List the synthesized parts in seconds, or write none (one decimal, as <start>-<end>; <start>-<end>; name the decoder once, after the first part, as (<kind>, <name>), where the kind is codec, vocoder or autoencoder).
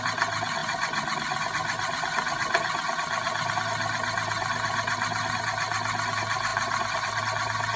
none